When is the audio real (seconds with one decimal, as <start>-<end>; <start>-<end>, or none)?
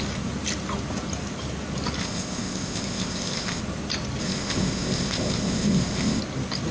0.0-2.0; 3.6-4.2; 6.2-6.7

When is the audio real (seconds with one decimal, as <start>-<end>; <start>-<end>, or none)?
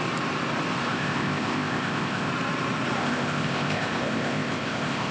0.0-0.9; 2.3-3.0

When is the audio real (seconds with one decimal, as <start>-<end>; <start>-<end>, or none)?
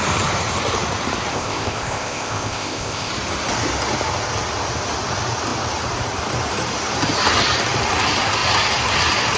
0.0-1.3; 3.1-9.4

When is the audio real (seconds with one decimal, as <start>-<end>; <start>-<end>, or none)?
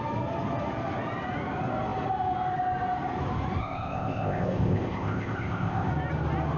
0.0-3.6; 5.9-6.6